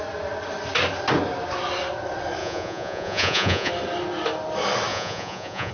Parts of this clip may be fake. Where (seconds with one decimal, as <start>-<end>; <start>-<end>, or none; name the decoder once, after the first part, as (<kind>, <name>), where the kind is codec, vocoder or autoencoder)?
2.4-3.7 (vocoder, Vocos); 4.9-5.7